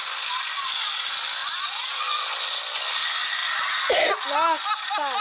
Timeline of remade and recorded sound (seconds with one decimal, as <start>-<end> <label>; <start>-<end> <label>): 0.0-1.4 recorded; 1.4-2.0 remade; 2.0-5.2 recorded